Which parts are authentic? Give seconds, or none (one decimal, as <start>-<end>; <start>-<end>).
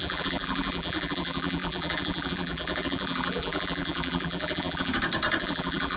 4.9-5.4